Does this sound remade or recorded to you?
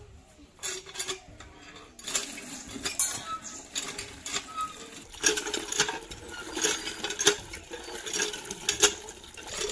recorded